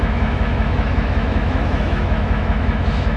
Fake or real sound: fake